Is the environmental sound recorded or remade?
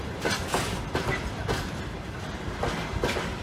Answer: recorded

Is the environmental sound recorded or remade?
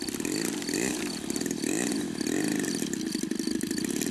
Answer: recorded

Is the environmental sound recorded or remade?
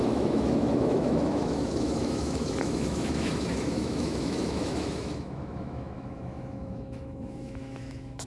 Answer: remade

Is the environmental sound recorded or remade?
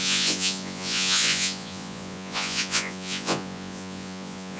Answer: remade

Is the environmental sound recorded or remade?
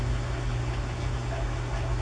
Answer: recorded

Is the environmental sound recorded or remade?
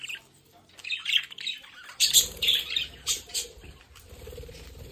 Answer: remade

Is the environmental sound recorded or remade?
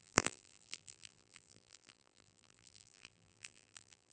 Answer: remade